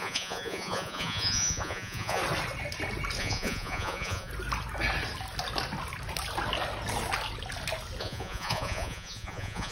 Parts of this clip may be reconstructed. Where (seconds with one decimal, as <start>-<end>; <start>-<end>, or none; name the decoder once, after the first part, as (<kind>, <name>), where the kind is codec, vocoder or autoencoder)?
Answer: 0.0-2.2 (vocoder, Vocos); 3.2-4.3; 8.0-9.7